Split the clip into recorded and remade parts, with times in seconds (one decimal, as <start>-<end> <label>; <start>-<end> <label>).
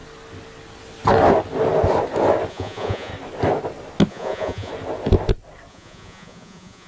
0.0-2.5 recorded; 2.5-3.1 remade; 3.1-4.1 recorded; 4.1-4.7 remade; 4.7-5.7 recorded; 5.7-6.9 remade